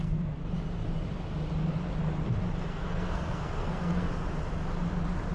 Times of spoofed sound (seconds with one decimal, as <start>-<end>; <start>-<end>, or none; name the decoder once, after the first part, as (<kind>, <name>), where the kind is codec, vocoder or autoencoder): 0.0-0.4 (codec, SNAC); 2.7-4.1